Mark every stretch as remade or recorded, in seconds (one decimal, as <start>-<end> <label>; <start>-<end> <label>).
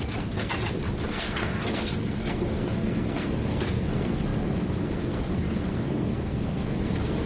0.0-0.6 remade; 0.6-1.1 recorded; 1.1-7.3 remade